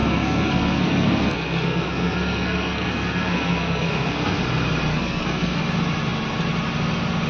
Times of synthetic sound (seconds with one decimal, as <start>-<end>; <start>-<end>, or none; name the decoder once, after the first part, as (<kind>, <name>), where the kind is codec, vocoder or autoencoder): 0.0-4.4 (codec, SNAC); 4.9-5.6

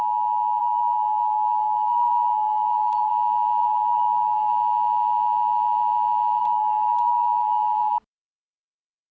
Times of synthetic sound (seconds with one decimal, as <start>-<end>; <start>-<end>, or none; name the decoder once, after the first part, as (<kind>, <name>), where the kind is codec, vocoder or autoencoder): 0.6-3.1 (codec, SNAC); 3.6-4.5; 6.4-7.9